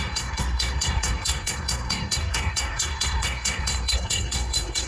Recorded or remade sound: remade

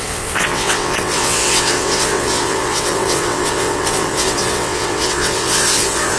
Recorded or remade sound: remade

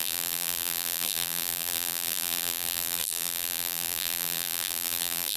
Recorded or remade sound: remade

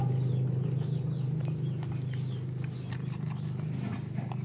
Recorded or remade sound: recorded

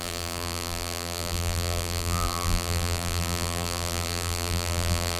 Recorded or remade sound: remade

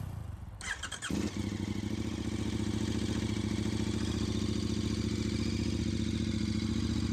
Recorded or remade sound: recorded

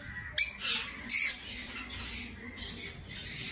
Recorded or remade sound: recorded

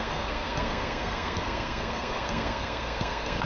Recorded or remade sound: remade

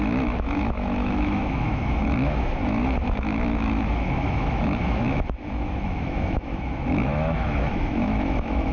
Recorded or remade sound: remade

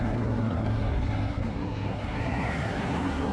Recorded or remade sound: remade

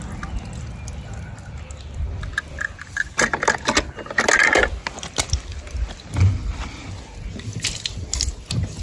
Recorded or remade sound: recorded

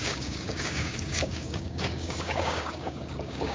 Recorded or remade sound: remade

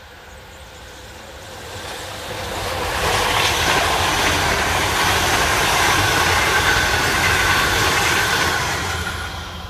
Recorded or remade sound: recorded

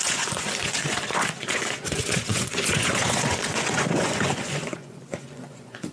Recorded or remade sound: remade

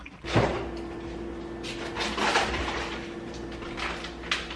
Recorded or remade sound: recorded